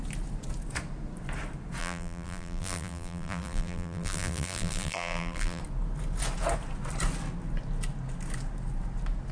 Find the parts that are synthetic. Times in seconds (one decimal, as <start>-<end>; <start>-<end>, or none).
1.8-5.6